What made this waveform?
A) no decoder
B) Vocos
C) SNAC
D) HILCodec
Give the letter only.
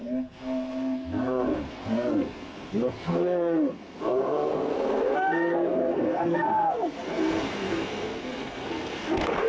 C